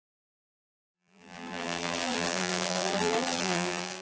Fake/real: fake